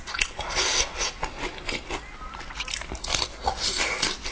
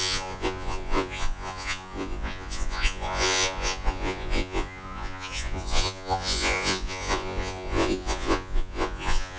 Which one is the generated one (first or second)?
second